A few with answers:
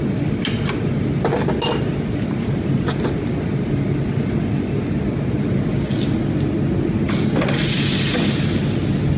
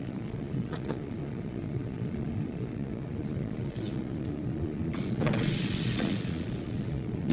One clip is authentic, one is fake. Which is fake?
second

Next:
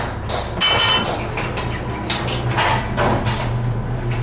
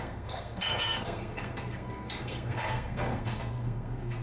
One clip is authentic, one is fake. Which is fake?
second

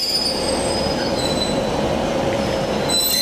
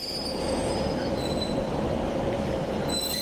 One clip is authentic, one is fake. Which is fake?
second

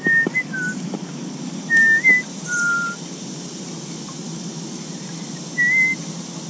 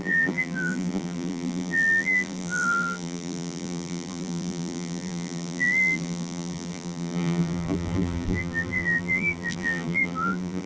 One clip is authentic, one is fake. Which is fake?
second